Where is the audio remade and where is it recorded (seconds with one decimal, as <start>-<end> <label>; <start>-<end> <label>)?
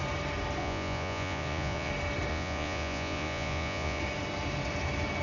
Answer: 0.0-0.6 recorded; 0.6-1.9 remade; 1.9-2.3 recorded; 2.3-4.0 remade; 4.0-5.2 recorded